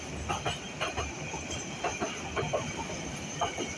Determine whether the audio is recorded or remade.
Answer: recorded